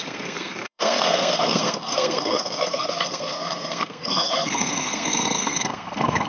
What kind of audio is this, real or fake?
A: fake